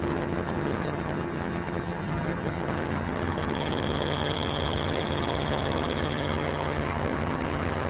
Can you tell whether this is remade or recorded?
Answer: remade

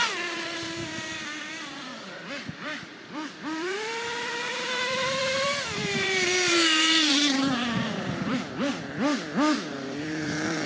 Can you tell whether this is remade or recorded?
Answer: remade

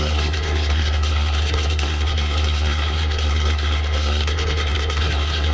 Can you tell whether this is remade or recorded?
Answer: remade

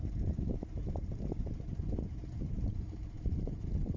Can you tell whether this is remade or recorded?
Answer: remade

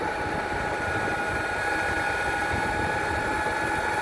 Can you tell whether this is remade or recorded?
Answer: recorded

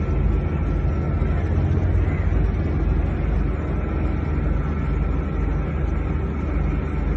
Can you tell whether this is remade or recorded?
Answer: recorded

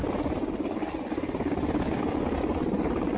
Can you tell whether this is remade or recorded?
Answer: recorded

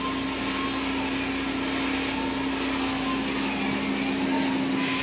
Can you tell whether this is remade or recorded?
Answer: recorded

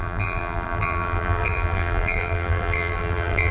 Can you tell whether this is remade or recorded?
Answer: remade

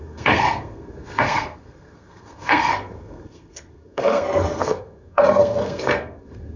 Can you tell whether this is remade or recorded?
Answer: remade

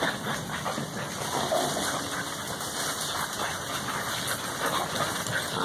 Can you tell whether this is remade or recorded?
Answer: recorded